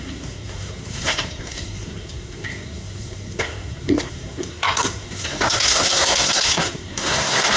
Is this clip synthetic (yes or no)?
yes